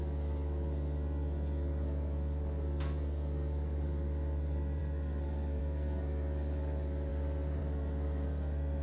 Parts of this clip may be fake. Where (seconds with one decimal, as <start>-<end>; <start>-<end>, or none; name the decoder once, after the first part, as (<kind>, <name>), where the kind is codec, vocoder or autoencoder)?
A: 0.0-8.8 (codec, SNAC)